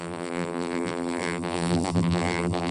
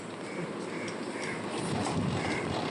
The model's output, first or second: first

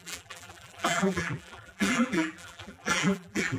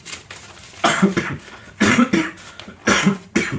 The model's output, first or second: first